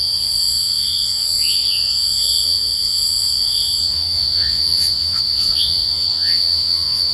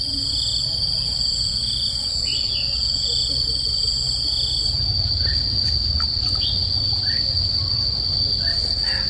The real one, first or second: second